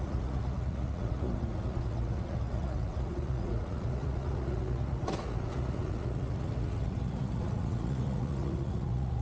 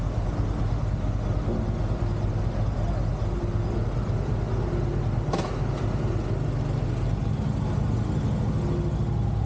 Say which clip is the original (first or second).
second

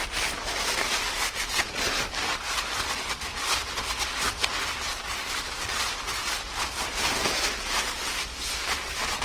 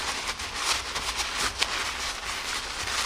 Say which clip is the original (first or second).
second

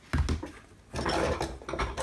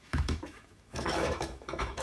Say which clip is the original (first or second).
first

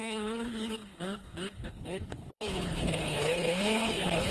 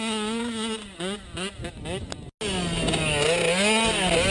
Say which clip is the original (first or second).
second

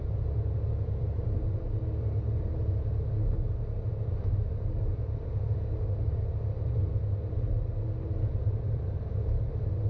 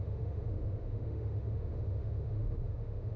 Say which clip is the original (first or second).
first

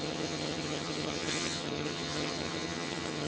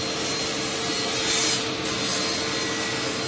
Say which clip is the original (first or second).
second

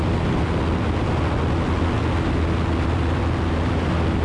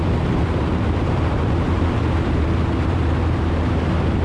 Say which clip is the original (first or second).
first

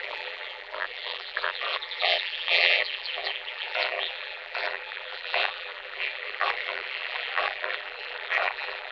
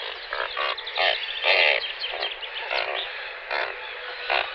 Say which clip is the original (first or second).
second